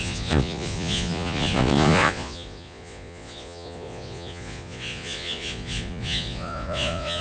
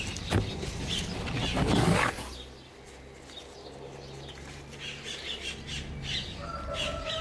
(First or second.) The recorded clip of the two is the second